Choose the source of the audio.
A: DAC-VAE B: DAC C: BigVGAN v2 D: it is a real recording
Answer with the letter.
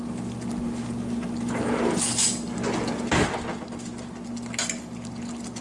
D